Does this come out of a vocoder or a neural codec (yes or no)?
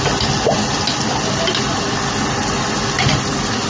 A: no